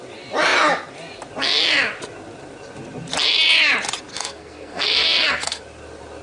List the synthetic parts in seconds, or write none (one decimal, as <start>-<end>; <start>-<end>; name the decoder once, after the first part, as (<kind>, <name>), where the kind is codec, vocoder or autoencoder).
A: 4.1-5.6 (codec, SNAC)